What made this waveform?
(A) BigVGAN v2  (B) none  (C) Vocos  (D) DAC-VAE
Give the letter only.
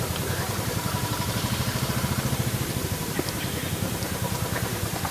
A